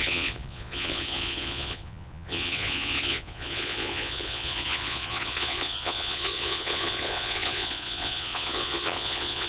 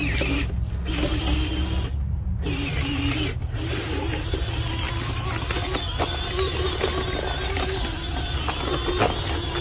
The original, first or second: second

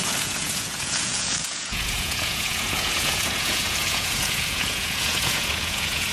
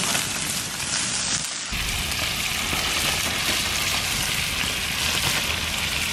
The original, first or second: second